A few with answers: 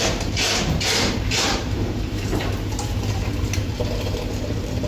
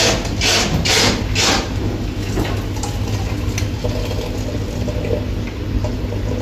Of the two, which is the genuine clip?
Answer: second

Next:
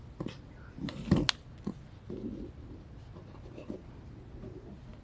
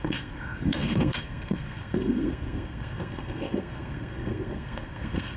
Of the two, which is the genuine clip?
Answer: first